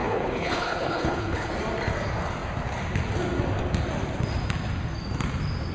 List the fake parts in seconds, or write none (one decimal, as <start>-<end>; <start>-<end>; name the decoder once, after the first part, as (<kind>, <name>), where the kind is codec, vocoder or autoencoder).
0.0-1.5 (codec, HILCodec)